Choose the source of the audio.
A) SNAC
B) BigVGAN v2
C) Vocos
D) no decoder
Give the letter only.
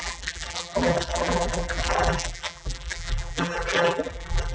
B